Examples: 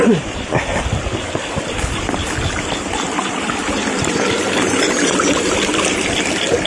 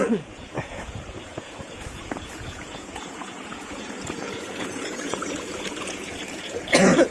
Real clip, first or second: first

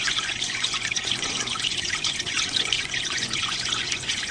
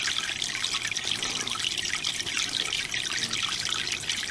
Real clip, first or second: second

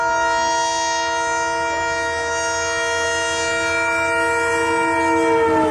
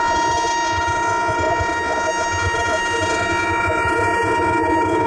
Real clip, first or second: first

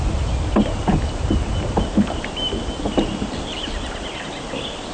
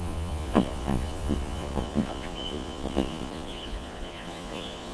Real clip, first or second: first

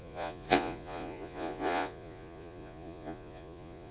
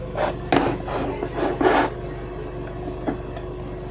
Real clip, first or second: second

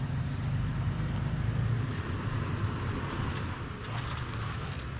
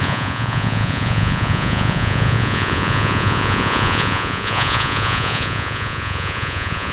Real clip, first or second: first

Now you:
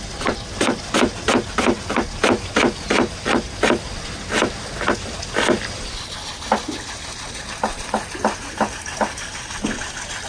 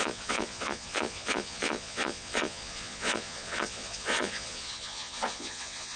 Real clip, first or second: first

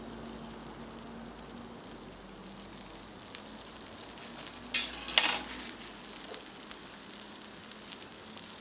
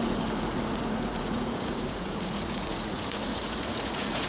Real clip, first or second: first